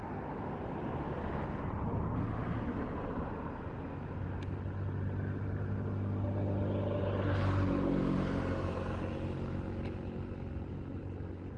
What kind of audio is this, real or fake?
real